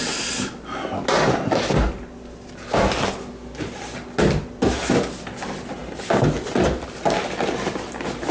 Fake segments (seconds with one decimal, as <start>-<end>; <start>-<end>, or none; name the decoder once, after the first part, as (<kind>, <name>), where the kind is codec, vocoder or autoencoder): none